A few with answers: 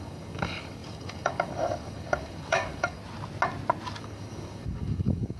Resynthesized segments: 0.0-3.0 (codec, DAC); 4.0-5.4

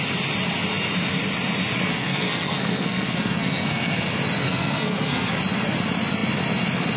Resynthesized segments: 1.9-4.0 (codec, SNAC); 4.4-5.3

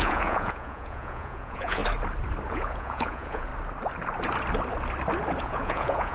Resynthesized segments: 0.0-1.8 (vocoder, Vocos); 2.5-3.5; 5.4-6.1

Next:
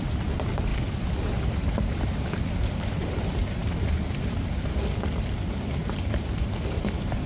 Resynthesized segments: none

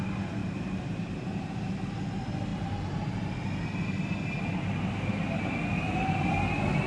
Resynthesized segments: 0.4-1.5 (vocoder, BigVGAN v2); 2.5-3.3

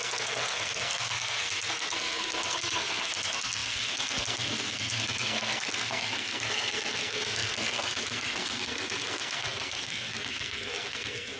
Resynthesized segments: 0.0-11.4 (codec, SNAC)

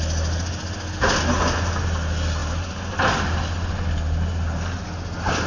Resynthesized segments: none

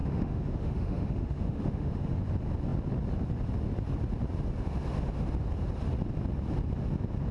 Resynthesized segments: 0.0-2.2 (autoencoder, DAC-VAE)